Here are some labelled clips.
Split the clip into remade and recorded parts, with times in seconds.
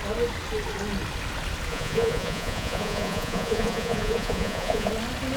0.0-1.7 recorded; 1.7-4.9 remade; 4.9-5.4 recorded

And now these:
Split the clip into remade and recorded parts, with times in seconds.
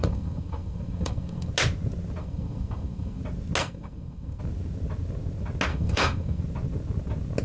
0.0-1.5 remade; 1.5-2.2 recorded; 2.2-3.2 remade; 3.2-3.6 recorded; 3.6-4.4 remade; 4.4-5.7 recorded; 5.7-6.4 remade; 6.4-7.4 recorded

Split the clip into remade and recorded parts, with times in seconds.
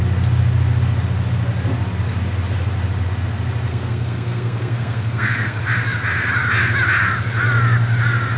0.0-3.7 recorded; 3.7-5.6 remade; 5.6-8.4 recorded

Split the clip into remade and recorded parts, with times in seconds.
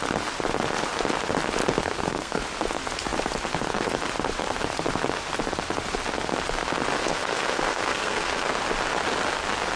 0.0-1.8 recorded; 1.8-2.4 remade; 2.4-7.0 recorded; 7.0-8.5 remade; 8.5-9.8 recorded